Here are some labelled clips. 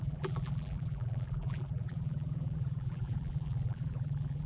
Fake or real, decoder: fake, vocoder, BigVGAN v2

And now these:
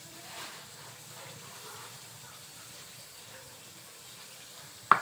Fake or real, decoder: fake, vocoder, BigVGAN v2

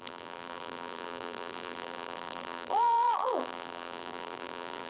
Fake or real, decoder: fake, vocoder, BigVGAN v2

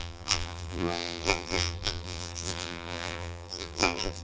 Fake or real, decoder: fake, vocoder, BigVGAN v2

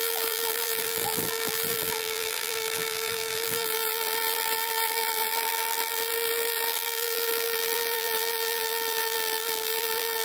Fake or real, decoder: fake, vocoder, BigVGAN v2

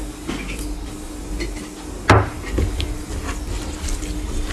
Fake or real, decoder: real